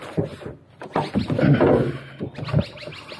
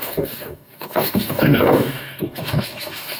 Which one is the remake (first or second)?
second